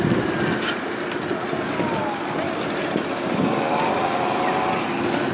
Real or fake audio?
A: real